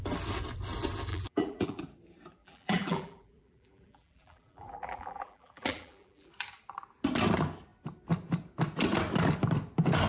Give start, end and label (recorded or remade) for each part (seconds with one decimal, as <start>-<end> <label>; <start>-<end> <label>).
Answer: 0.0-1.1 recorded; 1.1-1.8 remade; 1.8-2.4 recorded; 2.4-6.3 remade; 6.3-10.1 recorded